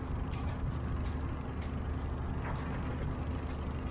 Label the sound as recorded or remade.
recorded